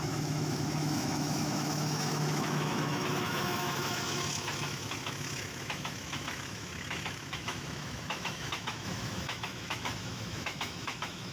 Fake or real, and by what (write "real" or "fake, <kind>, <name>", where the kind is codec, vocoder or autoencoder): fake, autoencoder, DAC-VAE